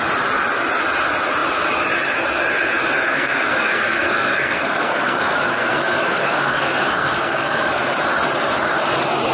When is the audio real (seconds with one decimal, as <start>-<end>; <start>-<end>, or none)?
0.0-3.1; 7.8-9.3